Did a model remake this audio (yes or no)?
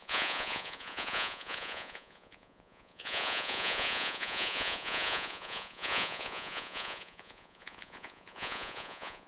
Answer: yes